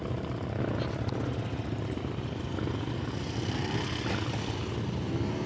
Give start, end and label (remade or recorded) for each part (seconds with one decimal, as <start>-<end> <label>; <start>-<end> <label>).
0.0-5.5 recorded